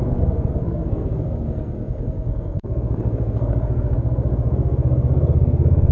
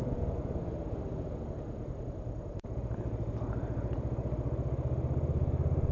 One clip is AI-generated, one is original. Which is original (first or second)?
second